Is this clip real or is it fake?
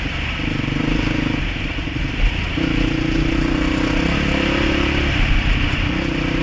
real